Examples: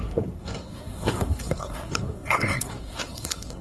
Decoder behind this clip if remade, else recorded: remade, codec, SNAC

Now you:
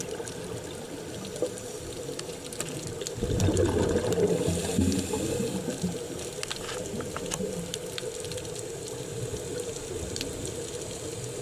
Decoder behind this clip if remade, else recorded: recorded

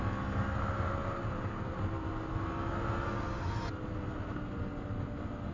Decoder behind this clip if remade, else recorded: recorded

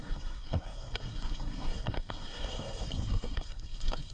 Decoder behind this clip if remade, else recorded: remade, codec, SNAC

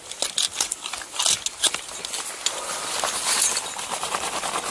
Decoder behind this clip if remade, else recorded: recorded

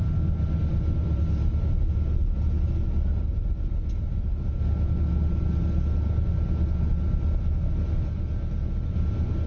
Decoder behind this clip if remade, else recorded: recorded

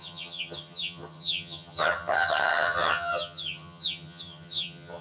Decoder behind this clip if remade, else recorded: remade, vocoder, HiFi-GAN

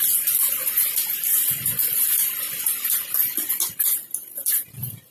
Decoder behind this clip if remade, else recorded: recorded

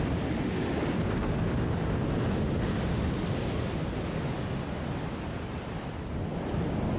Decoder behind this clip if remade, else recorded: recorded